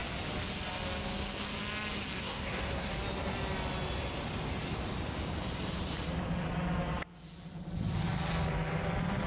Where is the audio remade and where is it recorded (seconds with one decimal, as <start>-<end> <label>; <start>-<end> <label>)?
0.0-2.2 recorded; 2.2-2.9 remade; 2.9-9.3 recorded